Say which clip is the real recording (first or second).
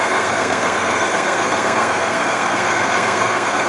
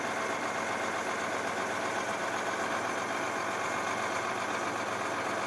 second